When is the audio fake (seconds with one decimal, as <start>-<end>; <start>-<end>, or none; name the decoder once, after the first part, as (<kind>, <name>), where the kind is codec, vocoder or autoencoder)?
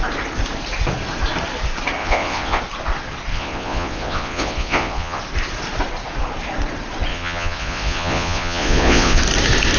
2.0-2.6 (vocoder, Vocos); 3.3-5.2; 7.1-9.2